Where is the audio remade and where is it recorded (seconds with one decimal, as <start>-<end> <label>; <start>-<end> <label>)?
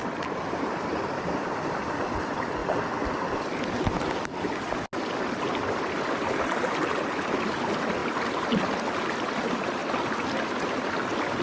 0.0-11.4 recorded